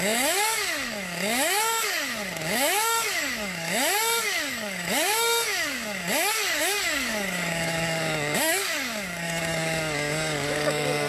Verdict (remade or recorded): remade